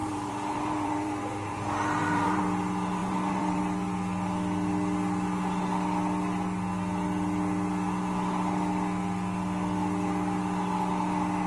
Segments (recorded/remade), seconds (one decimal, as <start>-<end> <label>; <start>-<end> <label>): 0.0-2.4 remade; 2.4-3.0 recorded; 3.0-3.6 remade; 3.6-11.5 recorded

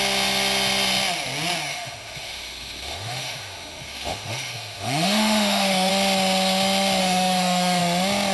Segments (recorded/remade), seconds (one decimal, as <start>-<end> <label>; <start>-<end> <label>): 0.0-1.7 recorded; 1.7-5.9 remade; 5.9-7.0 recorded; 7.0-7.8 remade; 7.8-8.3 recorded